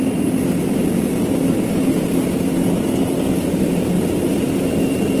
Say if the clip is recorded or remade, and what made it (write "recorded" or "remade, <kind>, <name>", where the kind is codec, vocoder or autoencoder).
recorded